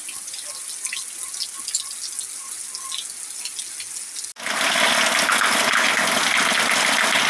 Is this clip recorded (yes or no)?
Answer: yes